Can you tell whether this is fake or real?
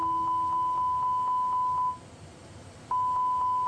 real